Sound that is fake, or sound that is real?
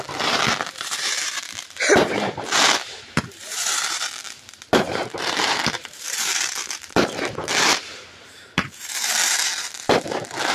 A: fake